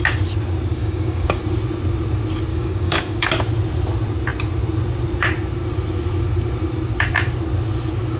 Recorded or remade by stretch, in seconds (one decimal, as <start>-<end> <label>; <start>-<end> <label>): 0.0-0.7 recorded; 0.7-1.4 remade; 1.4-2.5 recorded; 2.5-3.3 remade; 3.3-8.2 recorded

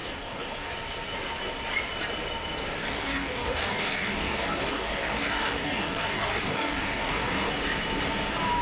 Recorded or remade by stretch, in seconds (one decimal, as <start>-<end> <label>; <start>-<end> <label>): 0.0-0.7 remade; 0.7-2.8 recorded; 2.8-7.5 remade; 7.5-8.6 recorded